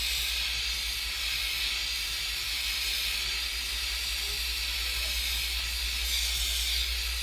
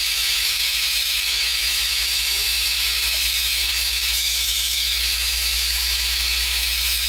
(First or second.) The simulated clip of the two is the second